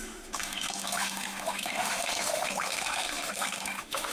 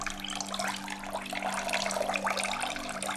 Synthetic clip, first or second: first